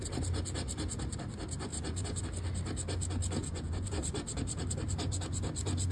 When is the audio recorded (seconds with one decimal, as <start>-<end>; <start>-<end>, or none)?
0.0-1.7; 2.2-3.4; 4.4-5.9